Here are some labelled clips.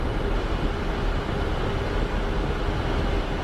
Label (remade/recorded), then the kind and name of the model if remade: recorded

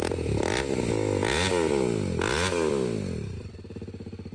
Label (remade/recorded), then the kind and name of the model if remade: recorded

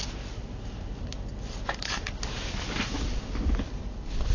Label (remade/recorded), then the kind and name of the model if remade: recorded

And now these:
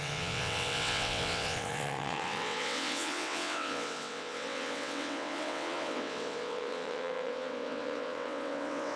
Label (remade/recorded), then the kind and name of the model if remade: remade, vocoder, WaveNeXt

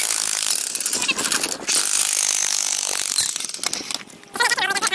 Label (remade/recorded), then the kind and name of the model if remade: recorded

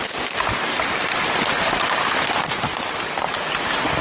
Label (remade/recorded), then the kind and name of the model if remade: recorded